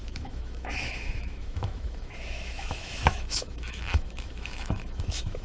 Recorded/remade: remade